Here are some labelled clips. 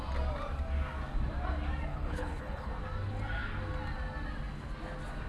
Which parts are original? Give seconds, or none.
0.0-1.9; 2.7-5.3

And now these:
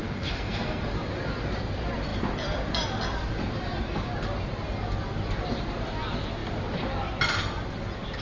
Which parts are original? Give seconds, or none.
0.8-8.2

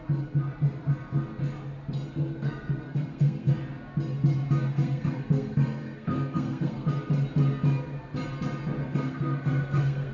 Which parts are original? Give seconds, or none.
0.0-2.1; 3.5-4.7; 6.9-8.8

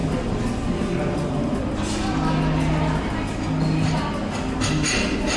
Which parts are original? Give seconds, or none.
0.0-5.4

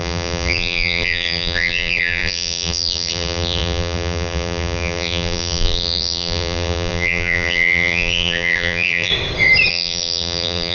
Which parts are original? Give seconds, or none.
9.1-9.7

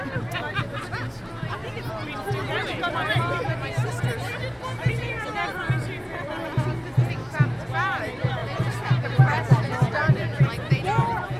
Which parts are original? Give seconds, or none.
0.0-11.4